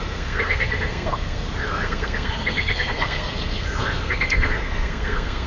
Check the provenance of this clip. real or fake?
fake